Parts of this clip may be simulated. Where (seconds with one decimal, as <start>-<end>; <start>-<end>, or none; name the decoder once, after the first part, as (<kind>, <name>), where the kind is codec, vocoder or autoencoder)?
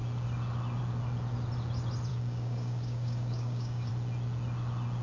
2.1-3.9 (codec, DAC)